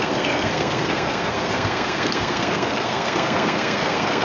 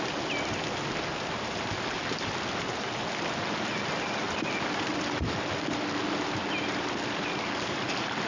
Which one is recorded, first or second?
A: second